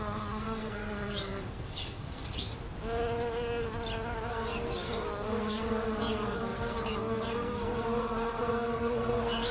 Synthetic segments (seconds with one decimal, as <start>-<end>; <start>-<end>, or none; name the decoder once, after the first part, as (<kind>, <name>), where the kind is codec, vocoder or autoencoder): 0.0-2.5 (codec, SNAC); 4.3-9.5